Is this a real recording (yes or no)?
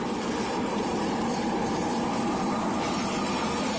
no